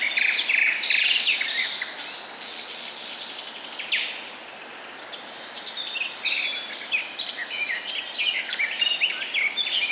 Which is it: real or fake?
real